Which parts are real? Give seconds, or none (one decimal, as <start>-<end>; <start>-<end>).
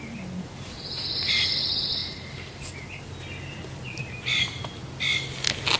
0.0-5.8